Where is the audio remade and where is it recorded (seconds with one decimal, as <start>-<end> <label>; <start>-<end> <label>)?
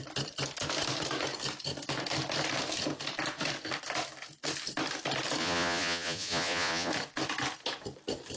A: 0.0-5.4 recorded; 5.4-6.9 remade; 6.9-8.4 recorded